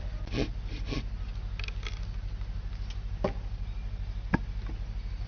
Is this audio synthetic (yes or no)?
no